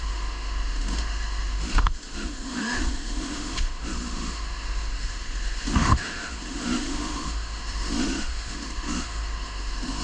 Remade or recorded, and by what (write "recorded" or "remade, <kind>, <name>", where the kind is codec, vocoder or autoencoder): remade, autoencoder, DAC-VAE